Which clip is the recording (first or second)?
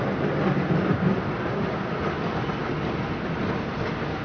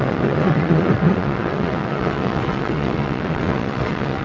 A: first